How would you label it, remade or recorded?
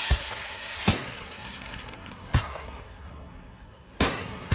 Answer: remade